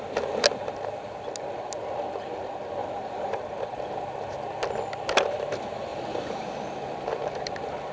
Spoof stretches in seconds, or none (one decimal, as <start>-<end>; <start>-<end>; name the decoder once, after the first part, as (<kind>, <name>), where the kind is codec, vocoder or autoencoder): 2.8-3.8 (vocoder, BigVGAN v2); 5.9-6.5